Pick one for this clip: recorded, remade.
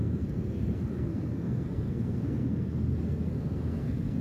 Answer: remade